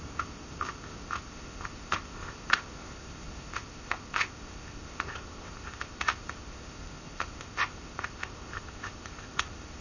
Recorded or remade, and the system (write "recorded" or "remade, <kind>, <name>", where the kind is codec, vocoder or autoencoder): remade, codec, ZipCodec